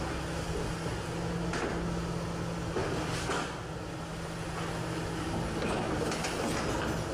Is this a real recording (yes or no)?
yes